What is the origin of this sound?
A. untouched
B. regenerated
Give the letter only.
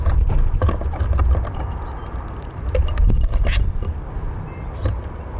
A